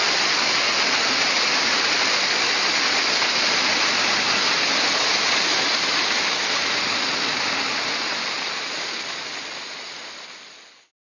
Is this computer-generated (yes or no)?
no